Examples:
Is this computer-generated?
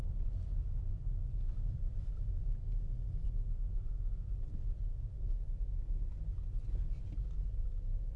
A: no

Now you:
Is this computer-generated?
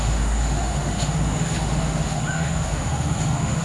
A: yes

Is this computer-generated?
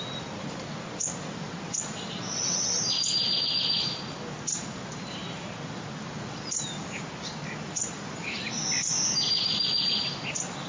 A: no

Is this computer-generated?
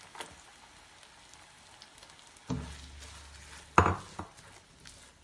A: no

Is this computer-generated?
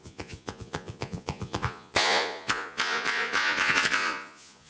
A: yes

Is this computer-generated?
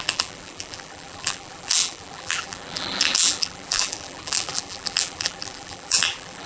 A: yes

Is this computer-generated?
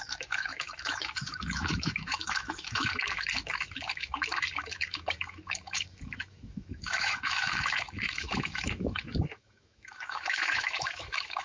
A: yes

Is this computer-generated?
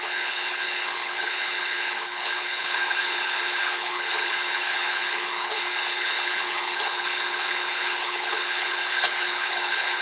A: yes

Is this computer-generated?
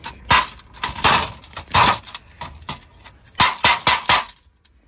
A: no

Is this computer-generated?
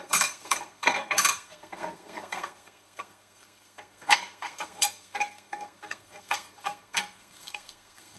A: yes